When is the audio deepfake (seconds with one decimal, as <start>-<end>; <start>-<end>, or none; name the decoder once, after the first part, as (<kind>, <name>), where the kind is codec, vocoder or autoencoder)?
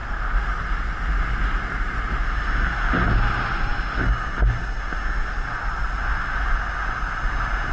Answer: none